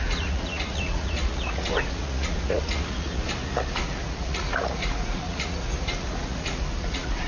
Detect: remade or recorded remade